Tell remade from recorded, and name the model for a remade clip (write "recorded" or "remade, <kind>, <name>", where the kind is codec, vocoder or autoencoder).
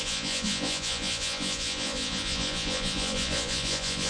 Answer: remade, vocoder, Vocos